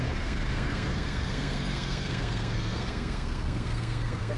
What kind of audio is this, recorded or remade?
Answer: remade